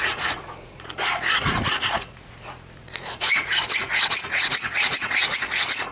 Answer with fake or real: fake